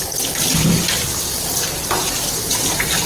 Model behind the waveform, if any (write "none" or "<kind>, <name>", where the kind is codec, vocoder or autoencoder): none